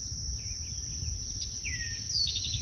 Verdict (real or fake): fake